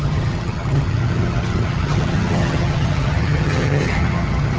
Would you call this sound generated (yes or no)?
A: yes